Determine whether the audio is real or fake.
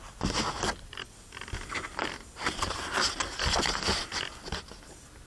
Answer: real